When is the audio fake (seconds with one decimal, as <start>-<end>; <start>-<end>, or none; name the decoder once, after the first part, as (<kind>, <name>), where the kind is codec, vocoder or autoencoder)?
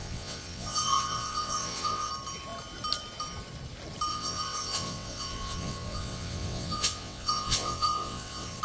0.0-2.1 (vocoder, WaveNeXt); 4.1-8.6